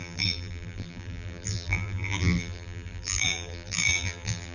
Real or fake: fake